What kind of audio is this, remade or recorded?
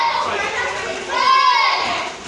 recorded